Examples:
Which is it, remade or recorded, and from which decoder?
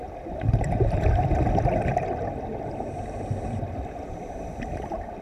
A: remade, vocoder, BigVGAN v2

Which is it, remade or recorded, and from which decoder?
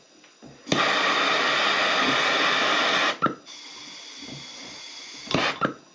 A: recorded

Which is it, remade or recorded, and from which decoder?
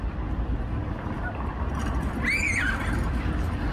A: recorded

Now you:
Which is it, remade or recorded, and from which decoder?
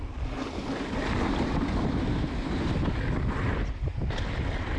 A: recorded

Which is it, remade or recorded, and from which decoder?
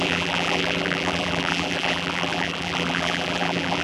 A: remade, vocoder, BigVGAN v2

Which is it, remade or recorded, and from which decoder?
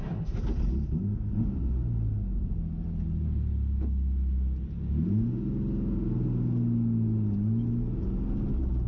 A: recorded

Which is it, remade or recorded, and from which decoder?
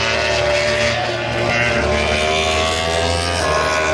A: recorded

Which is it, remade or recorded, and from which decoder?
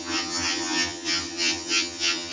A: remade, vocoder, HiFi-GAN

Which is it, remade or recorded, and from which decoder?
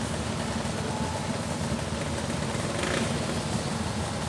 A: recorded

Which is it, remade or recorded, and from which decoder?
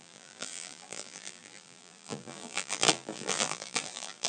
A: remade, vocoder, BigVGAN v2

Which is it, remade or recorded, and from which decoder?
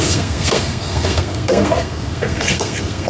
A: remade, codec, SNAC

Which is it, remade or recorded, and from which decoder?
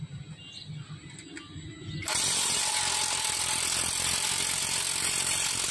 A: recorded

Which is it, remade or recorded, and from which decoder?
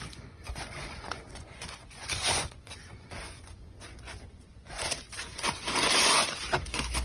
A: remade, vocoder, Vocos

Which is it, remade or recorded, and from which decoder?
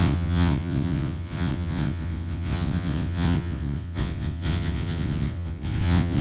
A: remade, vocoder, WaveNeXt